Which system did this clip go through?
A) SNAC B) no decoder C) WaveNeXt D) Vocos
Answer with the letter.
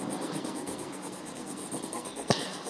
A